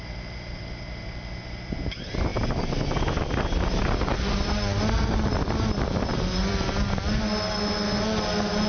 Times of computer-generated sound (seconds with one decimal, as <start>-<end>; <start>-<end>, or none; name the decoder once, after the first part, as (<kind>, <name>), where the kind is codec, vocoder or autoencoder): none